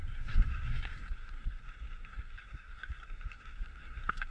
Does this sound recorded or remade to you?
remade